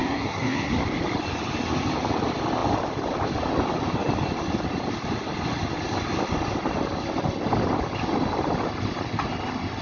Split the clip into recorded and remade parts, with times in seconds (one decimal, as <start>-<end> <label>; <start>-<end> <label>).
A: 0.0-0.7 remade; 0.7-9.8 recorded